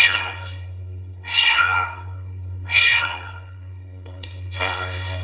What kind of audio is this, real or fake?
fake